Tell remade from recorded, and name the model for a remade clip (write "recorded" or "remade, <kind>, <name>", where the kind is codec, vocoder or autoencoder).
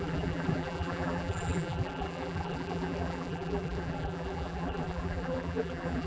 remade, vocoder, BigVGAN v2